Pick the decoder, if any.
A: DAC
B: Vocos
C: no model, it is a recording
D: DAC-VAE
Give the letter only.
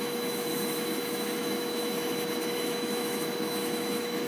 D